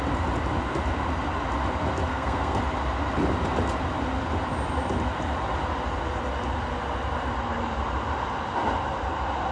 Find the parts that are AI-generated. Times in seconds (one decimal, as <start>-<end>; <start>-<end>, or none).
2.1-2.6